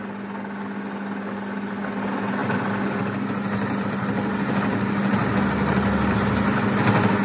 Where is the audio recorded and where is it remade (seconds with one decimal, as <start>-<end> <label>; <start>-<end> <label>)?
0.0-7.2 recorded